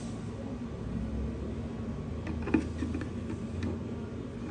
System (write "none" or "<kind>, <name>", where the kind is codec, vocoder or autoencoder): none